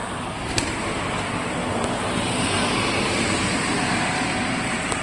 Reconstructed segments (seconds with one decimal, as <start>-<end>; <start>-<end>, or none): none